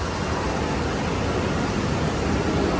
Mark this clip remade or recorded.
recorded